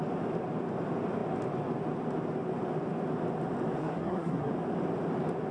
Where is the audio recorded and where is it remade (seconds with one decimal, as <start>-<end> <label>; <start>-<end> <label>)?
0.0-3.8 recorded; 3.8-4.5 remade; 4.5-5.5 recorded